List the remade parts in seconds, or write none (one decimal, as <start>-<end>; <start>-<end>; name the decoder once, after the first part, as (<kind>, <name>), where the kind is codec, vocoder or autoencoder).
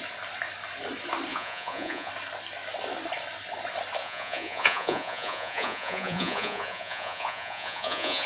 1.3-2.1 (vocoder, Vocos); 4.0-8.3